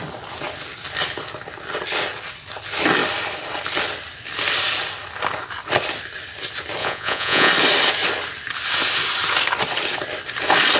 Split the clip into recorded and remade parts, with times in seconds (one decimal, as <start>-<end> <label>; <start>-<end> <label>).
0.0-6.8 recorded; 6.8-7.5 remade; 7.5-10.8 recorded